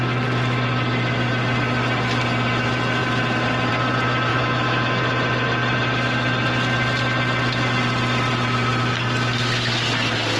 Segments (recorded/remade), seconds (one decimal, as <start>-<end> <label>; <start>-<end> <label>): 0.0-4.3 recorded; 4.3-5.0 remade; 5.0-10.4 recorded